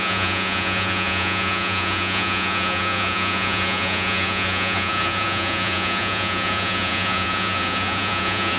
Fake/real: fake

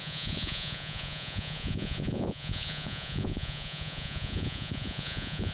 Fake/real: fake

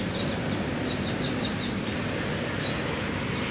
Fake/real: real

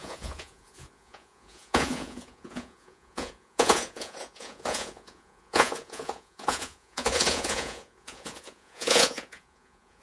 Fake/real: fake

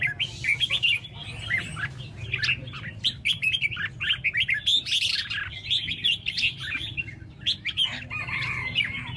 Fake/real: real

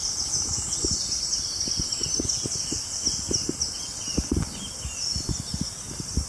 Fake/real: real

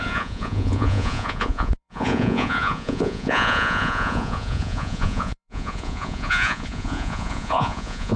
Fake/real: fake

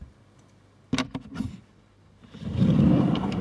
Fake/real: real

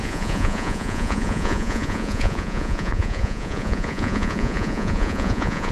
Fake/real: fake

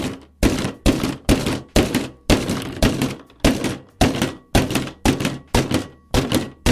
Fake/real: real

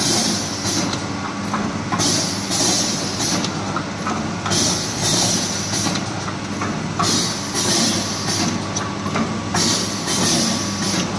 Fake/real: real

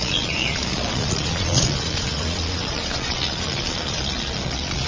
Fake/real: fake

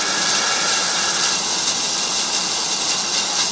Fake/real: real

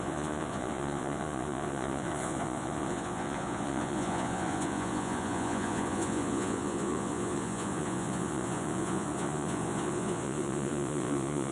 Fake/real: fake